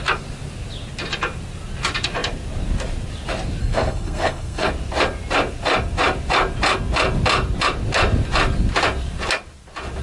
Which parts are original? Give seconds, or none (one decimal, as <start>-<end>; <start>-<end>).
0.0-3.6; 4.7-10.0